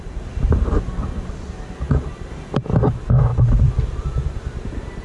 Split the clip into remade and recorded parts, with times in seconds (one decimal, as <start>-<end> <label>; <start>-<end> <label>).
0.0-5.0 recorded